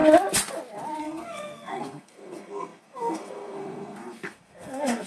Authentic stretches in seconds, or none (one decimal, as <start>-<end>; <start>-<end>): 0.0-1.0